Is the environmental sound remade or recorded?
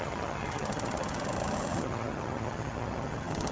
remade